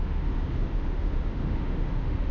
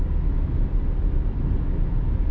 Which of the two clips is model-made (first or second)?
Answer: first